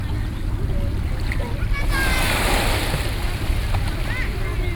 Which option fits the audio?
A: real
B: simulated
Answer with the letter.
A